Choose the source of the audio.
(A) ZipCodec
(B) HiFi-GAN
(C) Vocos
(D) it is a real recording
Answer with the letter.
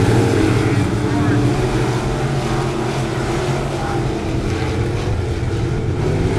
D